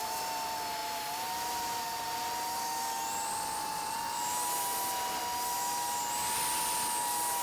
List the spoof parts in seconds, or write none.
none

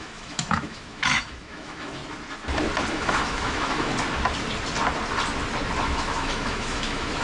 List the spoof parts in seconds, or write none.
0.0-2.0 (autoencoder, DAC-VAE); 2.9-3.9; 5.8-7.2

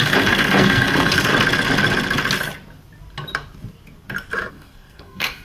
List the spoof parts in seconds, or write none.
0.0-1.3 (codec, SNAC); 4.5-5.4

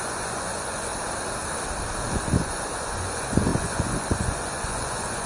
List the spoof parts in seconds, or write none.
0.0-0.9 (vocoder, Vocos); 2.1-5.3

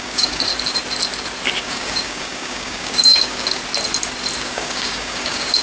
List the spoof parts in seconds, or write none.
0.0-0.5 (codec, DAC); 1.6-3.6; 4.4-5.6

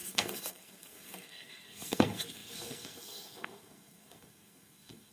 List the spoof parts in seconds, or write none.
0.0-5.1 (codec, SNAC)

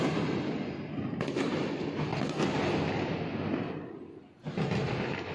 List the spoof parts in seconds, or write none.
none

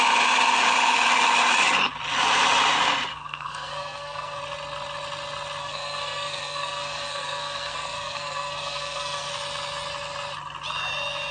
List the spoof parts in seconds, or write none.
3.1-4.4 (codec, SNAC); 5.6-9.3